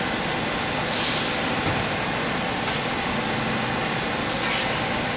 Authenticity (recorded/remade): recorded